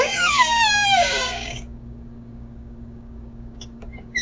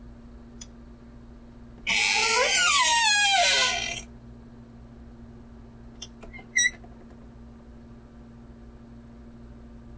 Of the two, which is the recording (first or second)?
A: second